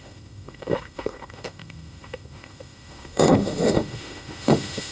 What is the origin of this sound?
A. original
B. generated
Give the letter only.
B